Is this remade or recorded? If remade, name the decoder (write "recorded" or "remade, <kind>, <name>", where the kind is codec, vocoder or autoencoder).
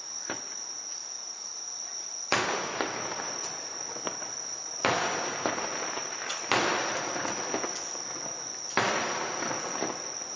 recorded